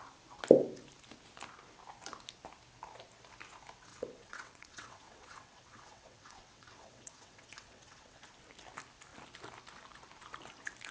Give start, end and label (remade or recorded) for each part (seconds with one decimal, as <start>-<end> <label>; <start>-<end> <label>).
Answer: 0.0-3.9 recorded; 3.9-8.3 remade; 8.3-10.9 recorded